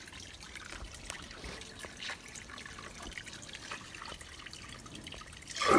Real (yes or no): yes